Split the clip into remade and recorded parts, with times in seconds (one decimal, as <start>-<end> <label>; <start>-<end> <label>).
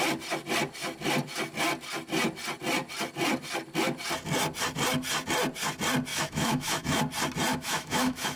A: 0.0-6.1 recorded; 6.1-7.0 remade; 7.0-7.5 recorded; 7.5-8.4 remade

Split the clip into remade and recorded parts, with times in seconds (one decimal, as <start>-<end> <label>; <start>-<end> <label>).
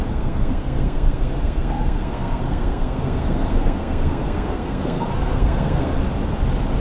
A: 0.0-5.9 remade; 5.9-6.8 recorded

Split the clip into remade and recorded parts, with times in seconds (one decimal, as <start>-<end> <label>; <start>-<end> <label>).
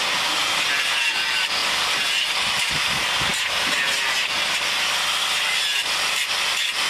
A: 0.0-6.9 remade